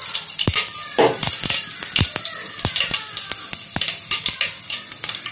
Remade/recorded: recorded